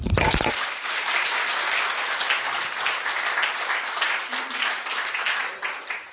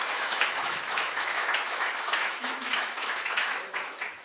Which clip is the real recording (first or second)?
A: first